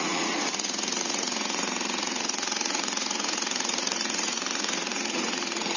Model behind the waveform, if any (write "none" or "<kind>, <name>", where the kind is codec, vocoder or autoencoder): vocoder, Vocos